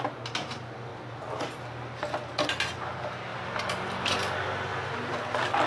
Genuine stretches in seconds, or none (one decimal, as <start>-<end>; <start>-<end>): 0.0-5.7